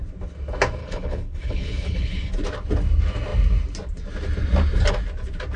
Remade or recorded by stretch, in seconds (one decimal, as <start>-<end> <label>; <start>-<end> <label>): 0.0-0.8 recorded; 0.8-2.3 remade; 2.3-5.6 recorded

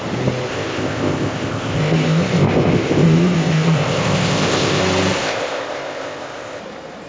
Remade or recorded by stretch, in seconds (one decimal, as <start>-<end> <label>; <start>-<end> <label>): 0.0-0.5 recorded; 0.5-4.8 remade; 4.8-5.2 recorded; 5.2-6.6 remade; 6.6-7.1 recorded

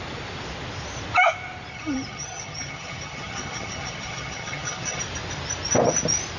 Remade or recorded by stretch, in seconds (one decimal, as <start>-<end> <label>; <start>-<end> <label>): 0.0-1.7 recorded; 1.7-5.0 remade; 5.0-6.4 recorded

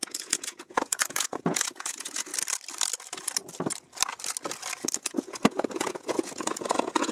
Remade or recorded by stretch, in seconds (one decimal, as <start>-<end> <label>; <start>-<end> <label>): 0.0-2.3 remade; 2.3-5.0 recorded; 5.0-7.1 remade

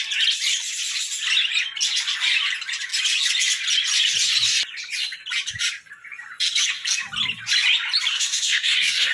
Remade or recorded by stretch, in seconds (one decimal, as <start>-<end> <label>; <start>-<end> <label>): 0.0-8.1 recorded; 8.1-9.1 remade

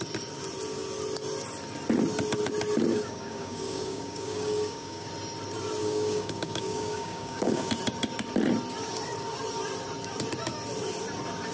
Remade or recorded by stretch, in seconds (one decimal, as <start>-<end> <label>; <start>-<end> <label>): 0.0-2.9 recorded; 2.9-5.1 remade; 5.1-5.8 recorded; 5.8-7.7 remade; 7.7-11.5 recorded

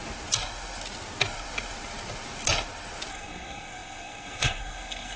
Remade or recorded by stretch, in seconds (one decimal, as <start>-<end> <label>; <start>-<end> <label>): 0.0-3.1 recorded; 3.1-5.2 remade